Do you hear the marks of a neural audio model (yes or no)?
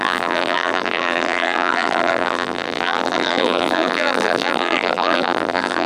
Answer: yes